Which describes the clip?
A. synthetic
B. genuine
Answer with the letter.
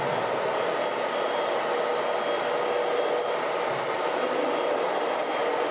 B